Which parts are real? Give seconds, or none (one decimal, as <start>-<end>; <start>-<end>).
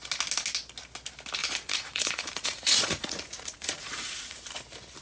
0.0-1.4; 4.4-5.0